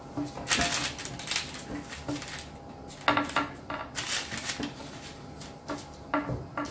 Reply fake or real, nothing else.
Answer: real